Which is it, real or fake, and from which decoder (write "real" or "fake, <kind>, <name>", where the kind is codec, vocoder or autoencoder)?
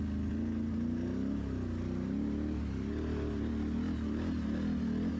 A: real